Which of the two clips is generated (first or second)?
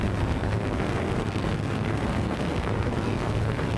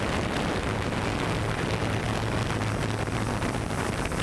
first